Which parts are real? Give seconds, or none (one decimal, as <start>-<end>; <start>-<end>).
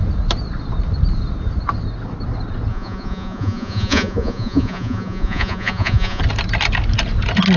0.0-2.7; 6.2-7.6